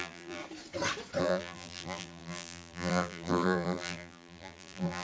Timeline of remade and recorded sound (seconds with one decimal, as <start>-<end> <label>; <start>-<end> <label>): 0.0-0.4 remade; 0.4-1.2 recorded; 1.2-5.0 remade